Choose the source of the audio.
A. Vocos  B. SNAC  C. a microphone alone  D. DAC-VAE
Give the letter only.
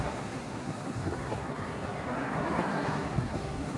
B